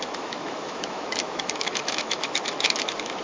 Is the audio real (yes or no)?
no